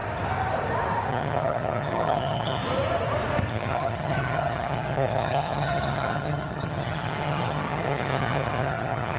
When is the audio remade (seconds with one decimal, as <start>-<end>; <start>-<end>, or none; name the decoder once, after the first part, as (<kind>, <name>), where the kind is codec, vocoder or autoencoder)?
1.1-2.6 (vocoder, HiFi-GAN); 3.5-9.2